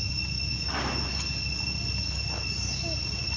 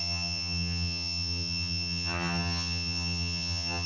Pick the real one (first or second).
first